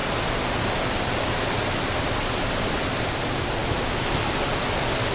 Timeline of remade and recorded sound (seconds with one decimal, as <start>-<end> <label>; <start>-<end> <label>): 0.0-3.6 recorded; 3.6-4.2 remade; 4.2-5.1 recorded

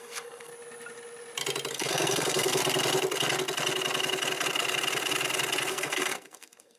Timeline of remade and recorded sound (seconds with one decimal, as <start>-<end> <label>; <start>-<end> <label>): 0.0-0.5 remade; 0.5-1.7 recorded; 1.7-2.6 remade; 2.6-5.7 recorded; 5.7-6.8 remade

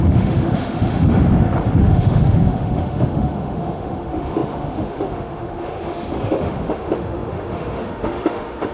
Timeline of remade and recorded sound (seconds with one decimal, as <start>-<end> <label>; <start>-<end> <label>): 0.0-1.2 remade; 1.2-1.8 recorded; 1.8-8.7 remade

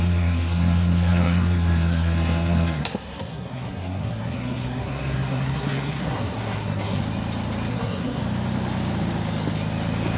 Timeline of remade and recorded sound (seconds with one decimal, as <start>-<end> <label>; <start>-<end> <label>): 0.0-7.0 remade; 7.0-7.7 recorded; 7.7-8.2 remade; 8.2-10.2 recorded

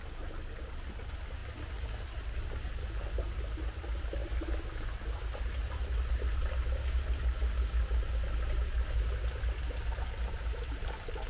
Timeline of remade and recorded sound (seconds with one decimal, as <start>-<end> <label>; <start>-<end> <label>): 0.0-11.3 recorded

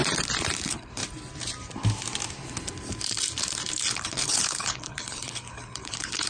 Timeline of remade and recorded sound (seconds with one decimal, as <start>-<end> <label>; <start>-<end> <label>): 0.0-0.6 recorded; 0.6-1.0 remade; 1.0-3.9 recorded; 3.9-6.3 remade